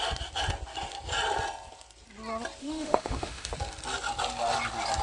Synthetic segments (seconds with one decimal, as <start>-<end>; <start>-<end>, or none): 2.6-3.5